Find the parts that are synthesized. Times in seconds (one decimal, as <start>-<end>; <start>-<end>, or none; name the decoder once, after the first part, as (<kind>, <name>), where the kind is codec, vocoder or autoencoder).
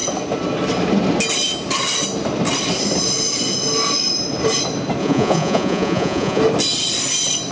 5.0-6.4 (vocoder, Vocos)